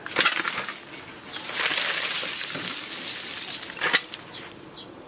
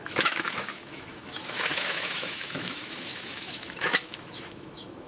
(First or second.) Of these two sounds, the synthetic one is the second